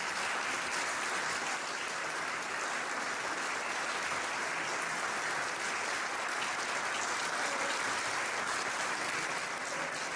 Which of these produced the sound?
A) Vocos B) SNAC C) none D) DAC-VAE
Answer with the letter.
C